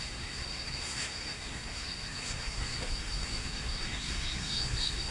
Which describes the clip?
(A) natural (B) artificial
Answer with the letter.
B